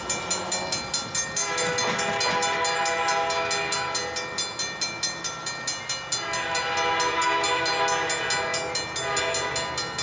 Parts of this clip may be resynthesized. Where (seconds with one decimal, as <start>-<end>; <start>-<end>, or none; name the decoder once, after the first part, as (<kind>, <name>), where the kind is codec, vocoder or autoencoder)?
none